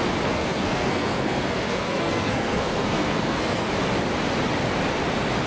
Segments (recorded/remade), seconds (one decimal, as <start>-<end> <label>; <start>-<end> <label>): 0.0-0.4 recorded; 0.4-3.7 remade; 3.7-5.5 recorded